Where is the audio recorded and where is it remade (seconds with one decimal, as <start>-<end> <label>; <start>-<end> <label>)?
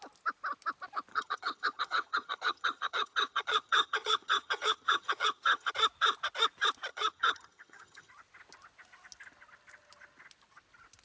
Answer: 0.0-1.1 recorded; 1.1-5.7 remade; 5.7-6.9 recorded; 6.9-8.1 remade; 8.1-11.0 recorded